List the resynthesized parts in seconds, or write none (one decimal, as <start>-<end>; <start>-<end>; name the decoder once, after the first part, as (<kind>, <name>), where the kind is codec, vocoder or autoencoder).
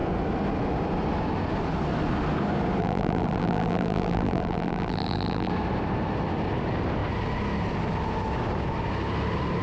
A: 2.8-5.5 (vocoder, BigVGAN v2)